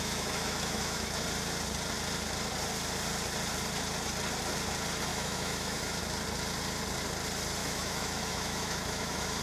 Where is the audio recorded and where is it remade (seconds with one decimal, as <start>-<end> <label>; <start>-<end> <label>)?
0.0-1.2 remade; 1.2-5.1 recorded; 5.1-6.0 remade; 6.0-7.6 recorded; 7.6-9.4 remade